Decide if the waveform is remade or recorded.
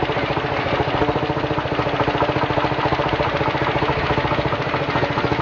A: recorded